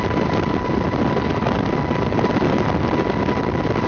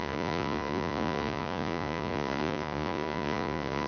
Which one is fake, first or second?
second